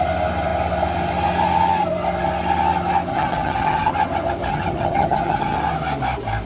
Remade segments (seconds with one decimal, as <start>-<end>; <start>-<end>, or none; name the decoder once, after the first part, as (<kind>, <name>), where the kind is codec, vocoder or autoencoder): 3.1-3.9 (vocoder, HiFi-GAN); 4.5-5.6